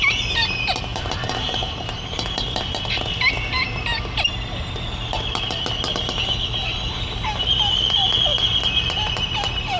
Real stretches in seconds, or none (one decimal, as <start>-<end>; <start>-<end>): 0.0-0.9; 3.2-9.8